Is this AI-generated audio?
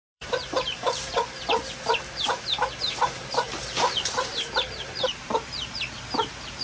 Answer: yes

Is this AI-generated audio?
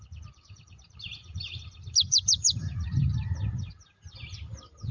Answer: yes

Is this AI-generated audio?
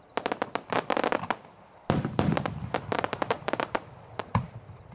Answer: yes